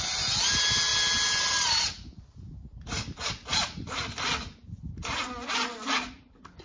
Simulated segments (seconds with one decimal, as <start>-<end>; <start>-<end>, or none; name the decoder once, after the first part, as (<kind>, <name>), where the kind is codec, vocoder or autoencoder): none